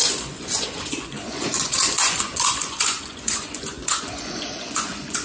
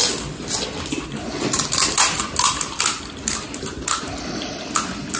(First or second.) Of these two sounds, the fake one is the first